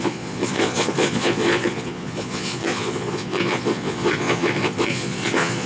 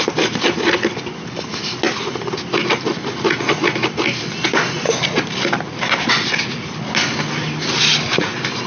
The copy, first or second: first